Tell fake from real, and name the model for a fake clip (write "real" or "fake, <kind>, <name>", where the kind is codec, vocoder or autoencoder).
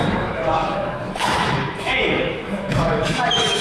fake, autoencoder, DAC-VAE